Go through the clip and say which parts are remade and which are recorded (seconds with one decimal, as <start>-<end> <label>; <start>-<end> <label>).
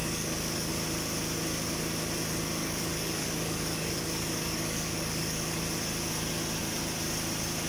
0.0-0.7 remade; 0.7-2.6 recorded; 2.6-5.6 remade; 5.6-7.7 recorded